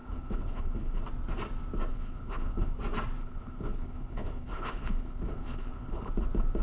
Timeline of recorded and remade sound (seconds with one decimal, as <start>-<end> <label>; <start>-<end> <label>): 0.0-1.0 remade; 1.0-1.9 recorded; 1.9-2.8 remade; 2.8-3.2 recorded; 3.2-6.1 remade; 6.1-6.6 recorded